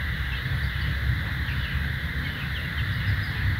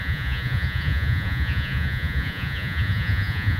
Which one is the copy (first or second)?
second